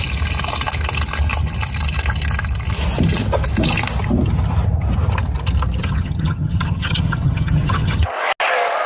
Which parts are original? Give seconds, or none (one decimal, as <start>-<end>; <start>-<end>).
0.0-5.8; 8.1-8.9